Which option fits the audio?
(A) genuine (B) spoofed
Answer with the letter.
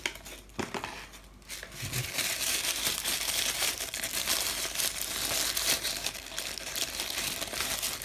A